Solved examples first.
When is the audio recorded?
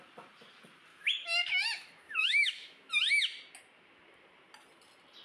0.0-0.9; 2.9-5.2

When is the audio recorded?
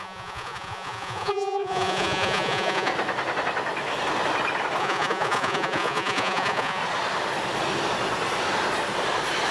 2.9-4.8; 6.8-9.5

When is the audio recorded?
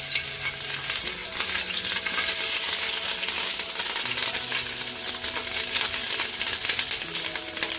0.0-1.2; 2.6-7.8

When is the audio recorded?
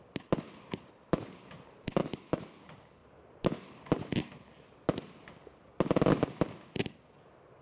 0.0-2.0; 2.6-7.6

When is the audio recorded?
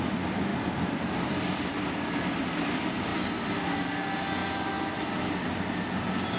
0.0-0.5; 2.1-6.4